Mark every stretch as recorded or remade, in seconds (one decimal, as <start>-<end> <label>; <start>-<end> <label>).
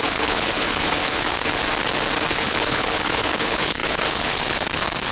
0.0-1.6 remade; 1.6-2.3 recorded; 2.3-5.1 remade